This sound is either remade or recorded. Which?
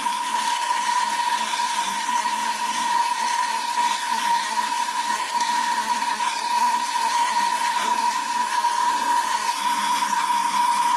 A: remade